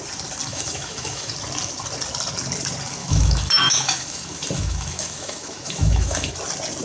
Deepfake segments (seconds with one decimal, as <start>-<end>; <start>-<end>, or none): 0.5-1.3; 3.0-6.3